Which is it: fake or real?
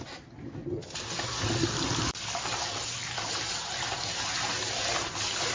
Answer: real